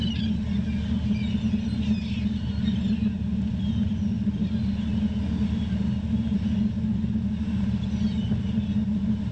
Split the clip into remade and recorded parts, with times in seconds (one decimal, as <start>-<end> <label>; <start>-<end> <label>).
0.0-9.3 recorded